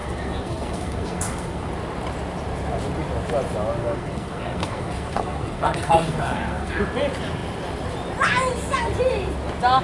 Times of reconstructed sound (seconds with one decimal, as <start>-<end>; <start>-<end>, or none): 0.0-1.7; 3.8-6.8